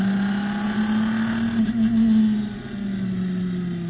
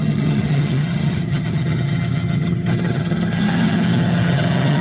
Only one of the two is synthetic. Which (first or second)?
second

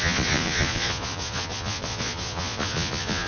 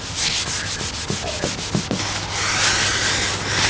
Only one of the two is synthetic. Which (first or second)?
first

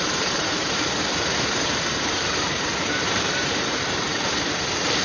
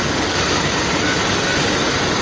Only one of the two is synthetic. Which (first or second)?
first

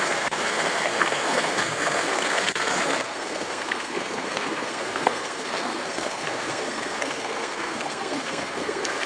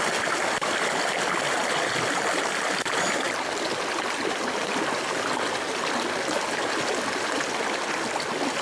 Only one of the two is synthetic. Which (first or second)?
first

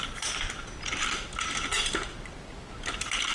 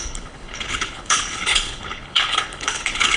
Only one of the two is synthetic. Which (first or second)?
second